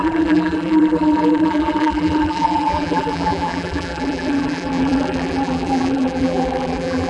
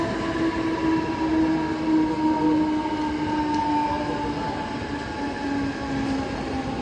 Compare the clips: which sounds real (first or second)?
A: second